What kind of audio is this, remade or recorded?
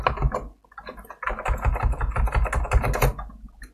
recorded